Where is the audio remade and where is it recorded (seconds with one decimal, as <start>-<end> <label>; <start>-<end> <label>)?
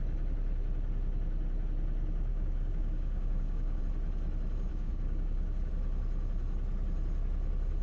0.0-2.3 recorded; 2.3-3.8 remade; 3.8-4.7 recorded; 4.7-5.7 remade; 5.7-7.8 recorded